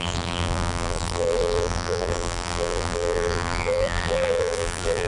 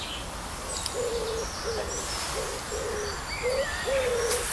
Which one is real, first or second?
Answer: second